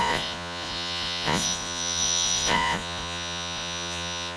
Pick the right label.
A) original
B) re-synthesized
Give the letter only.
B